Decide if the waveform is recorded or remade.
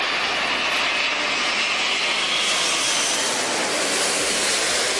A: recorded